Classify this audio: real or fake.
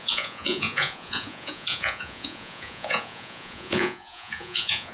fake